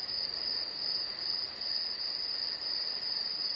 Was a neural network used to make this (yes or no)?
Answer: no